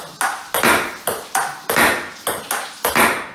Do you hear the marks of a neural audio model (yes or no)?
no